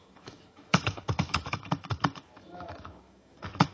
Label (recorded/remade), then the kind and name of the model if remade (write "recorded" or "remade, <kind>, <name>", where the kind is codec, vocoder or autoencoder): remade, autoencoder, DAC-VAE